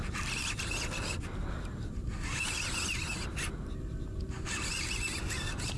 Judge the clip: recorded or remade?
recorded